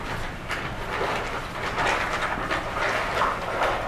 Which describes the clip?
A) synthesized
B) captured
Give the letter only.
B